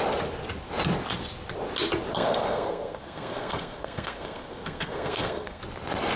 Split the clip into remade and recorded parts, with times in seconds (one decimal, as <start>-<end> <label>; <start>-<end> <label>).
0.0-2.1 recorded; 2.1-5.6 remade; 5.6-6.2 recorded

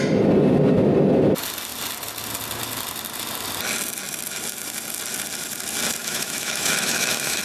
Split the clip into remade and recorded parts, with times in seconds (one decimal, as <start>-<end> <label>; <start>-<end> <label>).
0.0-6.0 recorded; 6.0-7.4 remade

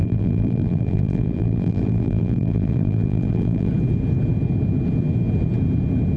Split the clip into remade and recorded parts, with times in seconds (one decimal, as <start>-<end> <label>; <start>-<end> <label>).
0.0-3.7 remade; 3.7-6.2 recorded

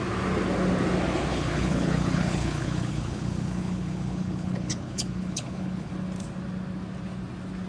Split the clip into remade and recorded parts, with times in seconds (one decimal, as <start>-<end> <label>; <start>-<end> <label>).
0.0-1.3 recorded; 1.3-5.9 remade; 5.9-7.7 recorded